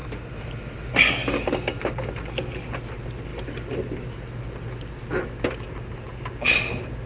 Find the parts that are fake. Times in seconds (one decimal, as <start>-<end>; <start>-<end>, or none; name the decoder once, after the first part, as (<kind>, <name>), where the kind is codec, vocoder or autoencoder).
none